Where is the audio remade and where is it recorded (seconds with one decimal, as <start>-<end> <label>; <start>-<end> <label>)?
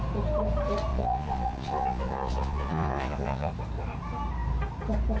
0.0-0.9 recorded; 0.9-3.5 remade; 3.5-5.2 recorded